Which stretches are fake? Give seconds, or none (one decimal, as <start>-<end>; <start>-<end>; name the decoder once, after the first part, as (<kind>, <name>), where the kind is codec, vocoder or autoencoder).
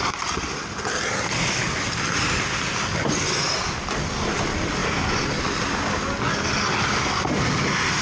none